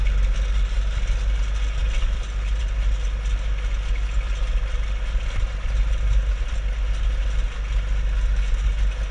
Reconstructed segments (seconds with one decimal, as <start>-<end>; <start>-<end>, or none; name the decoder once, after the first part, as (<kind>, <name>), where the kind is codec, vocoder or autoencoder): none